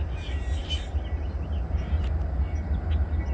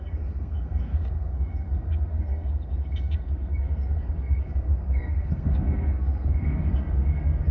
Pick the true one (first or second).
first